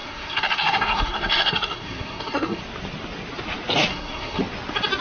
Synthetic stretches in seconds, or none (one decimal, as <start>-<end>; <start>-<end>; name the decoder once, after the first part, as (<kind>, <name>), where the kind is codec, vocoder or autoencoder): 0.0-2.6 (codec, SNAC); 3.9-4.4